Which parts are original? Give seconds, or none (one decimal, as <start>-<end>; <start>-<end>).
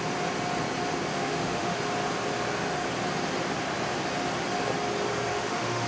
0.0-1.1; 1.8-5.3